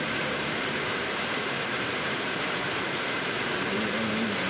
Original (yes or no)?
no